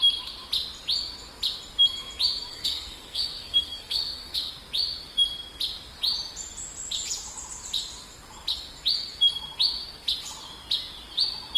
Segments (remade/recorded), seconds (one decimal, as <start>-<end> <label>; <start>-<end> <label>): 0.0-2.5 recorded; 2.5-4.5 remade; 4.5-11.6 recorded